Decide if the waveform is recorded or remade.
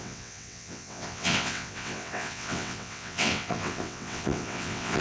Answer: remade